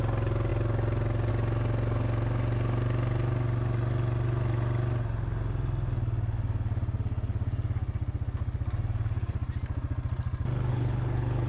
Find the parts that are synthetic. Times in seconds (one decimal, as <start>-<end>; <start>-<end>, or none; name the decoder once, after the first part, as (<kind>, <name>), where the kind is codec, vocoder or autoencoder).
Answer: 10.7-11.5 (codec, HILCodec)